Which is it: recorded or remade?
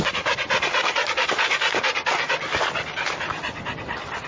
recorded